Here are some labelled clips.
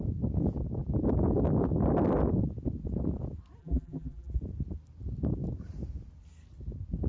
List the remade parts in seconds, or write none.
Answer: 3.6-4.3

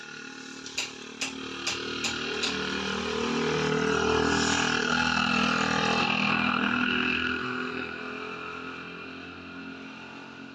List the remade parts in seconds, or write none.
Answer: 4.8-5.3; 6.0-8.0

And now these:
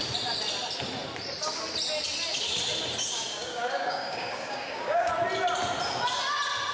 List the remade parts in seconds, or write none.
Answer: 3.1-5.1